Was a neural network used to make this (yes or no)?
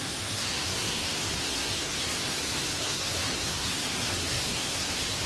yes